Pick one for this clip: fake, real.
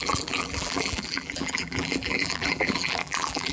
fake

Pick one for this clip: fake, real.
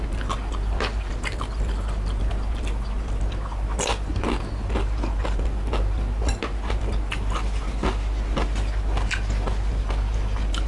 real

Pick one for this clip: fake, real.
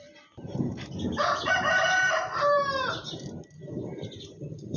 fake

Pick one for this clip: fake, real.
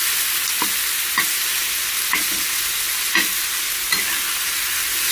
real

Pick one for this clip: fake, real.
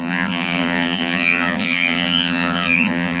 fake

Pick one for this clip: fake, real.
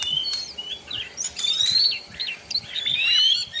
fake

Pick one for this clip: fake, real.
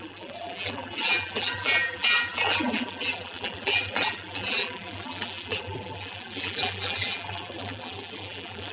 fake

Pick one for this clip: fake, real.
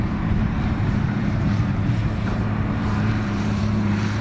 fake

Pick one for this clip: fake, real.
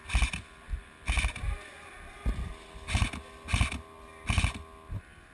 real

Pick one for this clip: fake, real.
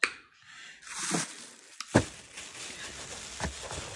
real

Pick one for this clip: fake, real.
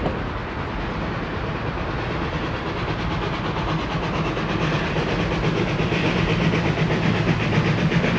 real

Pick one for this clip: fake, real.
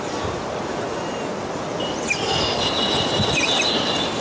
real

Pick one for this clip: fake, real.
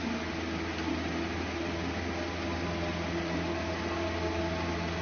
real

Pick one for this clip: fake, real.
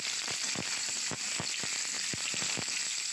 fake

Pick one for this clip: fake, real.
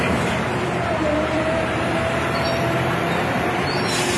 fake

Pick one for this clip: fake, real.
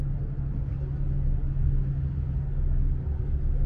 real